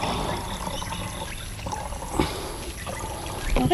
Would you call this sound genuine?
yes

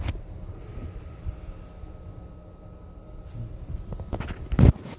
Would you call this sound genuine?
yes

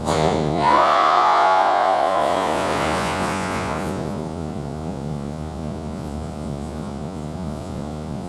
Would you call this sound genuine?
no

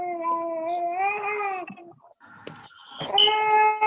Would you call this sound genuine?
yes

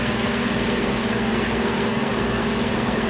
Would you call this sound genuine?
no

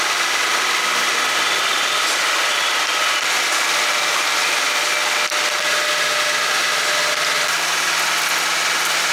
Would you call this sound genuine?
yes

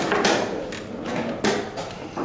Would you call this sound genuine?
yes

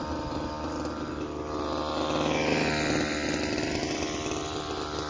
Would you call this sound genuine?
yes